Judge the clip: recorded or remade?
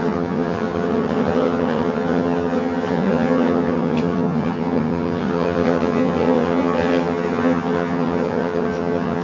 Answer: remade